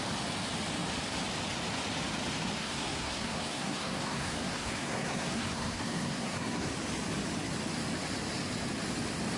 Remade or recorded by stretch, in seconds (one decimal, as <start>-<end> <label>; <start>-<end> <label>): 0.0-2.6 recorded; 2.6-6.7 remade; 6.7-9.4 recorded